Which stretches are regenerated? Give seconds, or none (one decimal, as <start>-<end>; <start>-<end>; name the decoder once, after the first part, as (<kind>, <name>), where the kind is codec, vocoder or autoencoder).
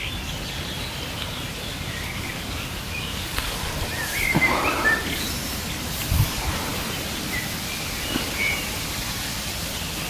1.7-3.8 (codec, DAC)